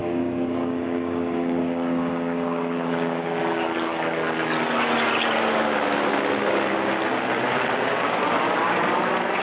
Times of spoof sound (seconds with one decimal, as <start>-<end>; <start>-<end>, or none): 0.0-3.4